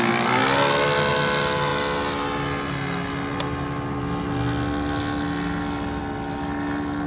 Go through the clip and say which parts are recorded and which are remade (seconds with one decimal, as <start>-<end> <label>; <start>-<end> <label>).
0.0-7.1 recorded